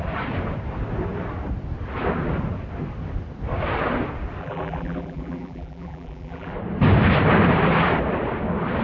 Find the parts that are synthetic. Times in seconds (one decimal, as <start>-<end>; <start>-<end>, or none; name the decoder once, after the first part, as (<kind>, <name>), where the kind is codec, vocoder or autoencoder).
4.4-6.5 (vocoder, BigVGAN v2)